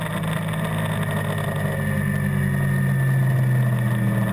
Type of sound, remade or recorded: recorded